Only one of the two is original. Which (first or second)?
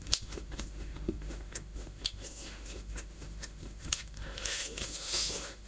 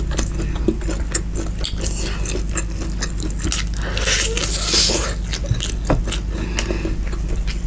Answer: second